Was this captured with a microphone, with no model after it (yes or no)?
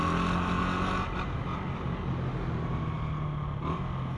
yes